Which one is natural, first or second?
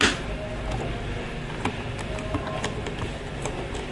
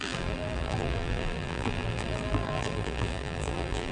first